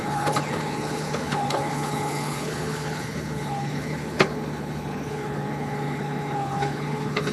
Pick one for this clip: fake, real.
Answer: fake